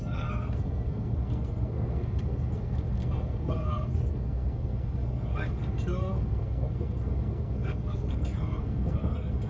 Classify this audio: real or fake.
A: fake